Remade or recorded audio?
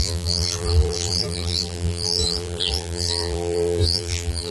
remade